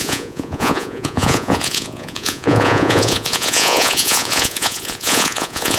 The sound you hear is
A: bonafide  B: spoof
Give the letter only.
B